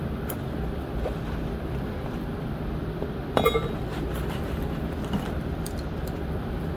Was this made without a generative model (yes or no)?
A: no